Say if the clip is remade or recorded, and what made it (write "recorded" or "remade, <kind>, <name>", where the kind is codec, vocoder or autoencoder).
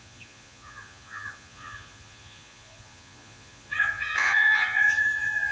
remade, vocoder, Vocos